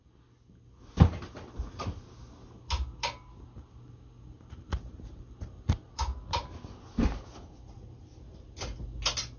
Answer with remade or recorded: recorded